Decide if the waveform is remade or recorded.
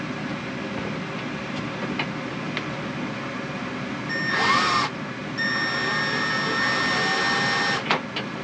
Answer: recorded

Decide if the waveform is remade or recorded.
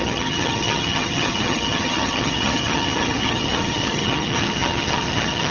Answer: remade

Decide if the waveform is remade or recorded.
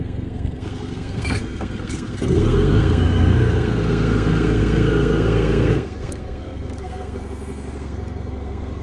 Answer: remade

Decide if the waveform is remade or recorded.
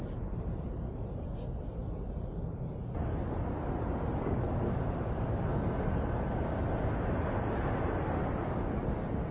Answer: recorded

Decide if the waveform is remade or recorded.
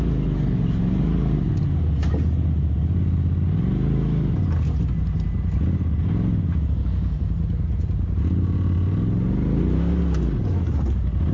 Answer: recorded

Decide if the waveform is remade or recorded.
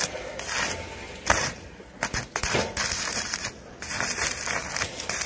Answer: remade